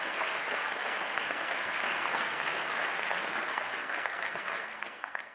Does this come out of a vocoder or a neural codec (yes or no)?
yes